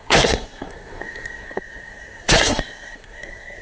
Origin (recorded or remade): remade